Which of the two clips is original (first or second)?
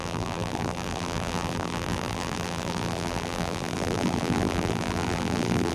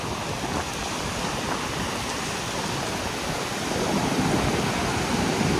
second